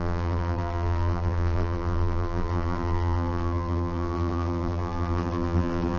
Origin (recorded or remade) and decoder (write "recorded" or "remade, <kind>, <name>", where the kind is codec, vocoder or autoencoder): remade, vocoder, BigVGAN v2